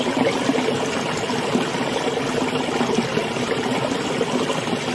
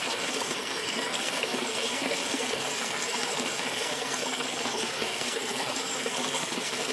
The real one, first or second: first